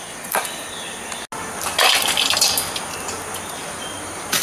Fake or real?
real